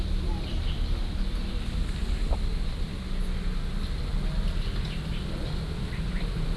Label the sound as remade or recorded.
recorded